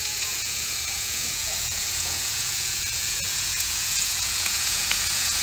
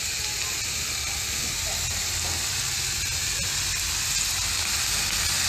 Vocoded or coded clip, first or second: first